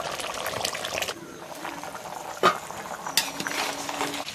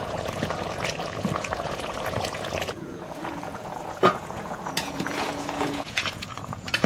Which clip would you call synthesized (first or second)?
second